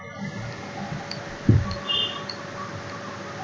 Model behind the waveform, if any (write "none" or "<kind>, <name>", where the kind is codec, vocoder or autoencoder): none